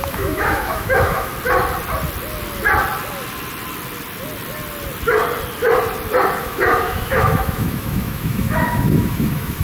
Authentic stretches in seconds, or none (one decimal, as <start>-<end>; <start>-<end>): 1.3-6.4